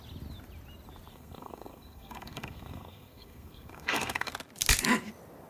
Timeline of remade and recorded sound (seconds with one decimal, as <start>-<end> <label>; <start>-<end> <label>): 0.0-1.1 recorded; 1.1-4.3 remade; 4.3-5.5 recorded